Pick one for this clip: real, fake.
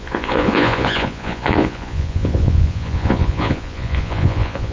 fake